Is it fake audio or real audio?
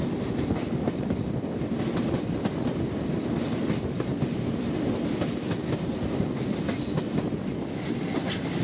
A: real